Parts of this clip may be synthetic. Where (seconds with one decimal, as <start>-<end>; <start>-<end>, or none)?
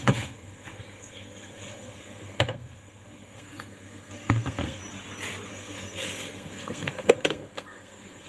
0.0-4.8; 5.5-8.3